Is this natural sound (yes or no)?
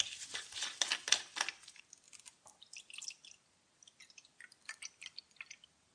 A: yes